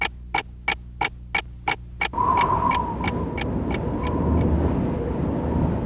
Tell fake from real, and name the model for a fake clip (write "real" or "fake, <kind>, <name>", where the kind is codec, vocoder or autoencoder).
real